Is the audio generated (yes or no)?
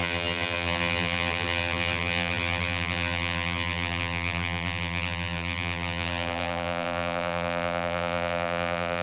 yes